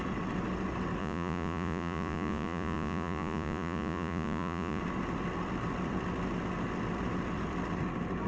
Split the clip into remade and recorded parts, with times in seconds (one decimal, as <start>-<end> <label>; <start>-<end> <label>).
0.0-1.0 recorded; 1.0-4.8 remade; 4.8-8.3 recorded